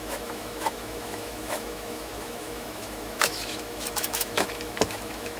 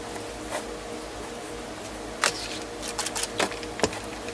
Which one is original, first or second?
second